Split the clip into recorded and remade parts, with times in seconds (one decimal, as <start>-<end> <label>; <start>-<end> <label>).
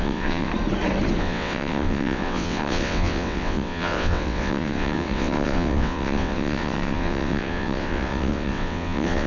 0.0-0.5 remade; 0.5-1.2 recorded; 1.2-9.3 remade